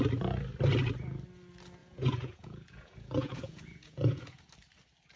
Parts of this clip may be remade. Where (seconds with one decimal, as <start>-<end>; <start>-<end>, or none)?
1.8-4.4